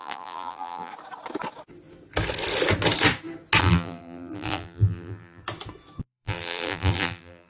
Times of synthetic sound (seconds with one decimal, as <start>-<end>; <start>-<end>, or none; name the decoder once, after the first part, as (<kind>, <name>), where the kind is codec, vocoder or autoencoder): 0.0-0.9 (vocoder, BigVGAN v2); 3.6-5.4; 6.0-7.5